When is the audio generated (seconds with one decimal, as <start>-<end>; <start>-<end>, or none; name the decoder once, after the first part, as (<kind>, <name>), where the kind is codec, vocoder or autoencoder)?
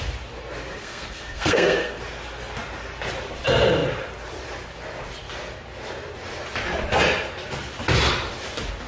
0.8-2.0 (codec, SNAC)